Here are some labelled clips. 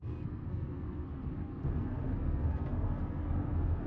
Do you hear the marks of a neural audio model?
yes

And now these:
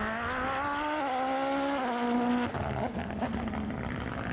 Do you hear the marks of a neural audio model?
no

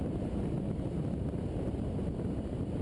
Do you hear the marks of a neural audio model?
no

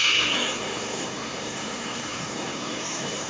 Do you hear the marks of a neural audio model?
yes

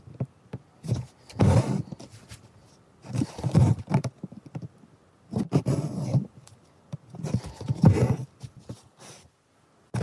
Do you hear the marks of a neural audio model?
no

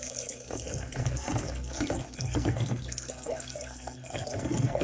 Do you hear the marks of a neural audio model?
yes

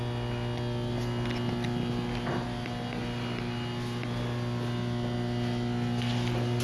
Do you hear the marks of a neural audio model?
no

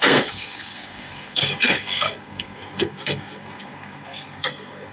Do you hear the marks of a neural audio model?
yes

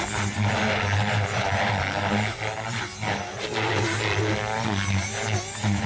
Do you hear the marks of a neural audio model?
no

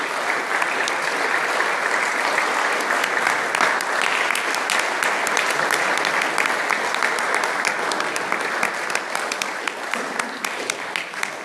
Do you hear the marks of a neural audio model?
no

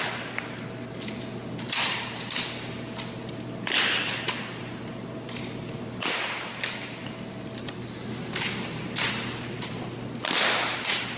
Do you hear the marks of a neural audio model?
no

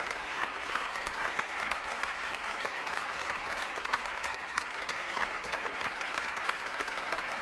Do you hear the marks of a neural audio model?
yes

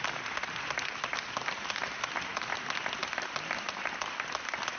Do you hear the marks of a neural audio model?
no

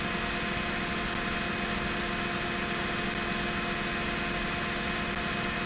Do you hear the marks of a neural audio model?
no